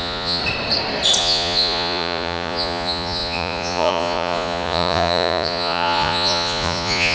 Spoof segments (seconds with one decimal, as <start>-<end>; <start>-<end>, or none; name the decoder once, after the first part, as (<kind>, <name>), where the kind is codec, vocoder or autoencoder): 0.0-0.4 (vocoder, Vocos); 1.2-7.1